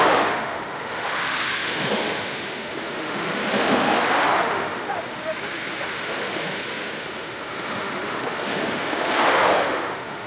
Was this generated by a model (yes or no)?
yes